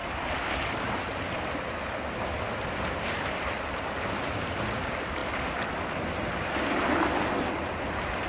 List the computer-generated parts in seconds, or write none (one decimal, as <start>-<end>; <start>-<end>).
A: none